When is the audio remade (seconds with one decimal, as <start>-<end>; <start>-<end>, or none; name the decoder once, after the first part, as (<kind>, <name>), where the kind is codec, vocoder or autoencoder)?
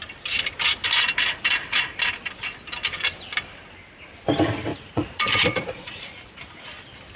4.7-6.4 (vocoder, Vocos)